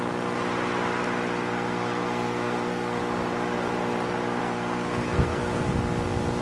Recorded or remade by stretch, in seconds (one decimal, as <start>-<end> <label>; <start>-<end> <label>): 0.0-1.5 recorded; 1.5-3.0 remade; 3.0-4.4 recorded; 4.4-5.7 remade; 5.7-6.4 recorded